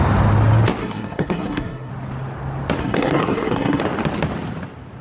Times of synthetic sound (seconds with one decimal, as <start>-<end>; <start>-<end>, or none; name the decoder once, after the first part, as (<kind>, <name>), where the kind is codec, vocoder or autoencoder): 0.8-1.9 (codec, SNAC); 2.8-3.8

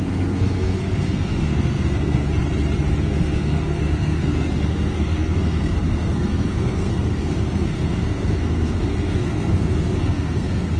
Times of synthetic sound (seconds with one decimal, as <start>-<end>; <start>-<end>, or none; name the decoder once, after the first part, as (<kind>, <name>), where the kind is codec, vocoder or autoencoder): 0.0-2.3 (codec, SNAC); 3.0-10.8

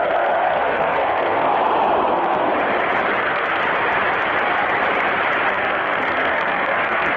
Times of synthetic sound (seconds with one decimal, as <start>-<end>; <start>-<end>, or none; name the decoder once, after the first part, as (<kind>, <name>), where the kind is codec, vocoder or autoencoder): 0.0-1.5 (codec, SNAC); 2.1-2.5; 3.2-3.6; 5.5-7.2

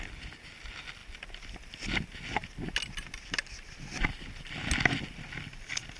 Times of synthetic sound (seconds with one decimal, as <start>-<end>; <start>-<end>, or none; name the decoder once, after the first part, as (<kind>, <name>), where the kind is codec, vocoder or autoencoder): none

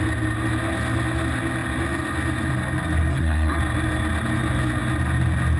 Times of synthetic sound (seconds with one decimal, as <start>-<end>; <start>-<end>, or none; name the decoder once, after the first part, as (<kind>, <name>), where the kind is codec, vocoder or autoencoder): 3.1-3.6 (codec, SNAC)